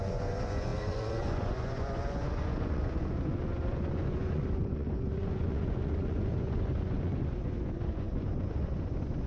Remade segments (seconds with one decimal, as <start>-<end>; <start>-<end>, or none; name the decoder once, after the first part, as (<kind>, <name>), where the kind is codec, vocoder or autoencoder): 0.0-9.3 (vocoder, Vocos)